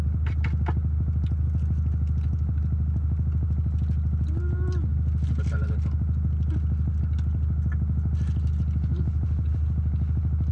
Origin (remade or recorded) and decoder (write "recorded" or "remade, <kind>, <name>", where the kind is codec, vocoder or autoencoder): recorded